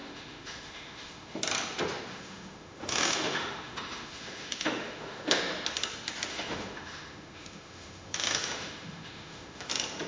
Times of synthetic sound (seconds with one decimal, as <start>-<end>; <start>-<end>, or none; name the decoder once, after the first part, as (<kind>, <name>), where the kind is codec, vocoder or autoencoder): 0.0-1.4 (autoencoder, DAC-VAE); 2.1-5.4; 6.3-9.7